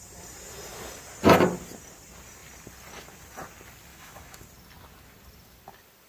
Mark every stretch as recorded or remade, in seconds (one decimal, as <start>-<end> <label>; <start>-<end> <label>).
0.0-3.9 recorded; 3.9-4.4 remade; 4.4-6.1 recorded